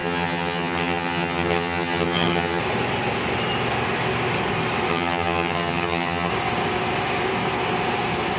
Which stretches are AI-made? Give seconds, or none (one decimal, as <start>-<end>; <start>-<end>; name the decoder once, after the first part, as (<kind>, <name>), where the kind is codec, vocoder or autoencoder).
0.0-2.6 (vocoder, HiFi-GAN); 4.9-6.3